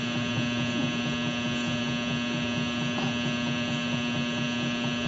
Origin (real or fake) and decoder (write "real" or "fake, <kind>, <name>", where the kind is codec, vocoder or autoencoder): real